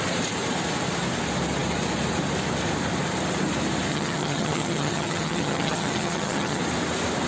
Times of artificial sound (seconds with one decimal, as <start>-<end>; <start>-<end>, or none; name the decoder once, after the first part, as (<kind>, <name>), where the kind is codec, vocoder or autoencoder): 3.9-6.6 (vocoder, HiFi-GAN)